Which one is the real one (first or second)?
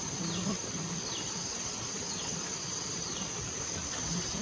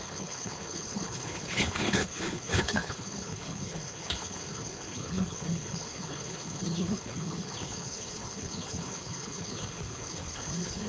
first